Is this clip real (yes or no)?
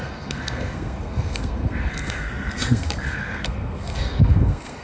no